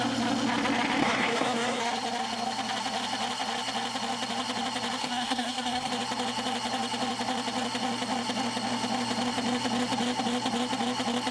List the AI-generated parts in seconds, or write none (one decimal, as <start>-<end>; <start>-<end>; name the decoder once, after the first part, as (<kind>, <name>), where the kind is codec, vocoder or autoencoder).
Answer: 1.0-1.8 (codec, SNAC); 5.0-5.9

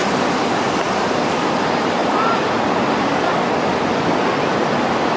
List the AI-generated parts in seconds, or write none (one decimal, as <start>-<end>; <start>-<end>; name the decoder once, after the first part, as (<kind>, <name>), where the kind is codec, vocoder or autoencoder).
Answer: none

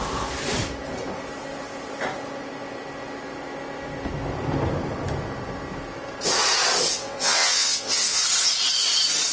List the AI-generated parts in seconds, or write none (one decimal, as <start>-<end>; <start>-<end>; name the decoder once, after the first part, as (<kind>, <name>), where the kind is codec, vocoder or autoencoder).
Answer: 6.9-8.2 (vocoder, WaveNeXt)

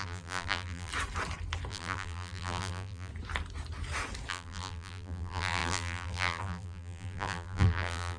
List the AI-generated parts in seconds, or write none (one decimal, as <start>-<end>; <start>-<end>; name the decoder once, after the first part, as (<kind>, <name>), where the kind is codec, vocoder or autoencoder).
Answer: 0.0-0.9 (vocoder, BigVGAN v2); 1.7-3.1; 4.3-8.2

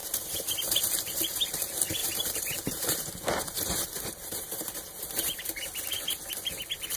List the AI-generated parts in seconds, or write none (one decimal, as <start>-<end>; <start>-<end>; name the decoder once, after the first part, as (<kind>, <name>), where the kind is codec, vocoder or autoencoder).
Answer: 2.0-5.4 (vocoder, BigVGAN v2)

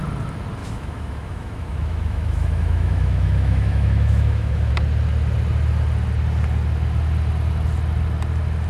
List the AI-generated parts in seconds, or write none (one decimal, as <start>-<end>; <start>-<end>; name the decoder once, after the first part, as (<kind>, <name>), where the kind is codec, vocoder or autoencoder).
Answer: 0.6-4.7 (autoencoder, DAC-VAE)

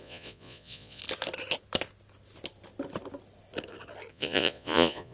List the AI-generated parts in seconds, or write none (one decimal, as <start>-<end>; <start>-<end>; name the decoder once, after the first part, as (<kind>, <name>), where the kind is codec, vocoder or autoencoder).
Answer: 0.0-1.0 (vocoder, Vocos); 4.1-5.1

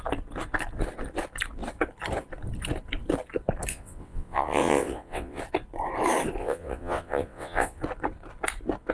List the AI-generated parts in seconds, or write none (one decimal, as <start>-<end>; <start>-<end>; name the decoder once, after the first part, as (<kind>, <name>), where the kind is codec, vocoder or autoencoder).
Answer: 3.7-5.4 (vocoder, WaveNeXt); 6.4-7.8